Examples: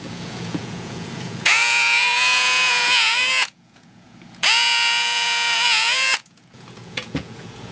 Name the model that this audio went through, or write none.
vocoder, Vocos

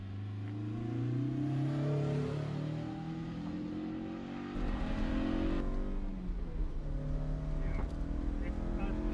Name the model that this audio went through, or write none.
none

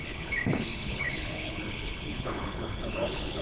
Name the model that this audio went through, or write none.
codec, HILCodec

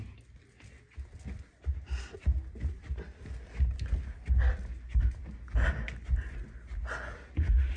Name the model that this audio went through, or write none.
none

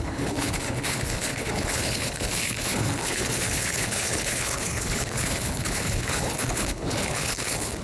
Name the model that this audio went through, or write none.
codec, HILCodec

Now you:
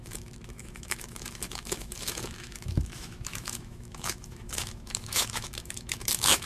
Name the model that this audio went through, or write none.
autoencoder, DAC-VAE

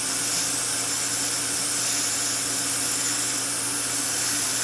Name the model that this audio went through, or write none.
none